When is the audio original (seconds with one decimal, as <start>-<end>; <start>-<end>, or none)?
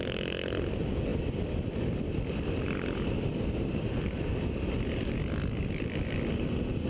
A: 0.0-6.9